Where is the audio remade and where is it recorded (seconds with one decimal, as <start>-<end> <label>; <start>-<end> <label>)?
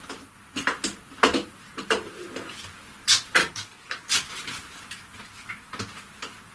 0.0-3.4 recorded; 3.4-4.1 remade; 4.1-6.5 recorded